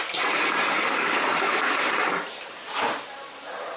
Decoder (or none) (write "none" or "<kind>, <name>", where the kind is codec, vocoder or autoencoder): vocoder, BigVGAN v2